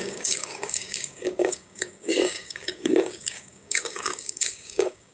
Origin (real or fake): fake